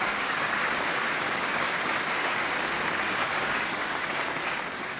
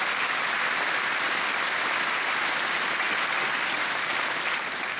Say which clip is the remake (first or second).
first